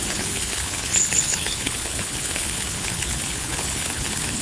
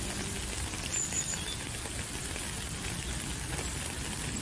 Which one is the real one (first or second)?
second